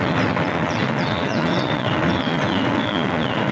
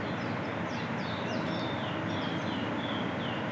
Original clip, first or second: second